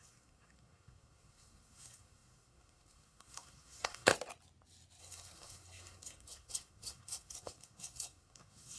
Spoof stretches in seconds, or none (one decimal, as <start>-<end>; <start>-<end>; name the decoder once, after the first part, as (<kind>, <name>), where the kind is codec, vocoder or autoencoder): 0.0-4.1 (codec, SNAC); 5.0-8.8